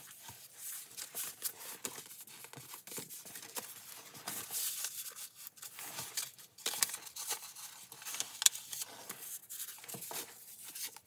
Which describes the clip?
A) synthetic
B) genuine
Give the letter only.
B